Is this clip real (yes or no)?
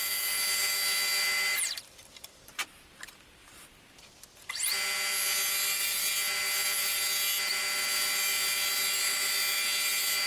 yes